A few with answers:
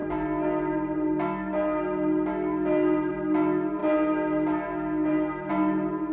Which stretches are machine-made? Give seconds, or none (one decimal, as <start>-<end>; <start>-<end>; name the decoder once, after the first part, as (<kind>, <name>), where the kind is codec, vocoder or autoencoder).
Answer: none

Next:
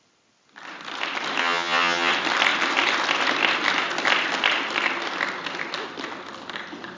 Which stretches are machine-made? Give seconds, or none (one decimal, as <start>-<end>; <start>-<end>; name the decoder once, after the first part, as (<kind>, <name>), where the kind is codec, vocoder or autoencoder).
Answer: 1.4-2.1 (vocoder, HiFi-GAN)

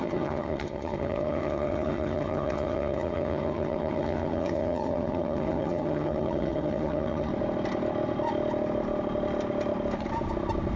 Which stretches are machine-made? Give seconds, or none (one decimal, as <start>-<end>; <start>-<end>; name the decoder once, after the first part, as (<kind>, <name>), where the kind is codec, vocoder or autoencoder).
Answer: 0.0-7.3 (vocoder, HiFi-GAN)